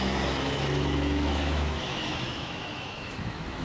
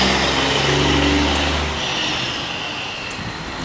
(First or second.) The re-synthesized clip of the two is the first